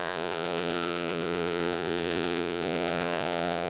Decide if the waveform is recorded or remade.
remade